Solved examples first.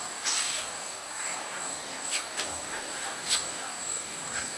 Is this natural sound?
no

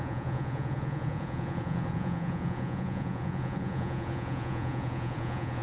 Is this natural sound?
no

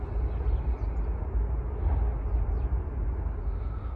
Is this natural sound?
yes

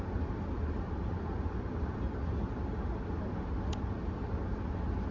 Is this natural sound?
yes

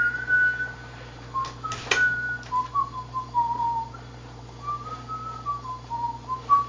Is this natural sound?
yes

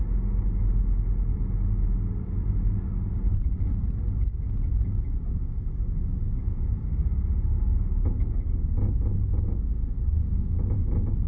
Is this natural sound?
yes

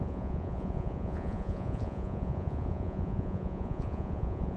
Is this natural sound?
no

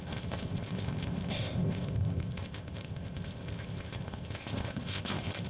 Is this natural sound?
no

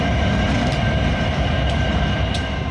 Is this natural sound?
yes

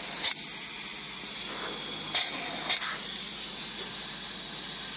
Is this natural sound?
yes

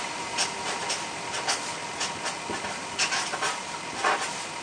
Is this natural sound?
yes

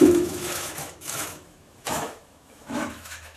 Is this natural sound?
no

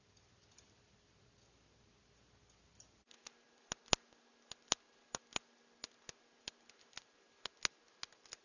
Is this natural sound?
yes